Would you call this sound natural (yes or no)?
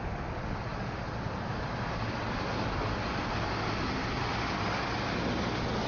yes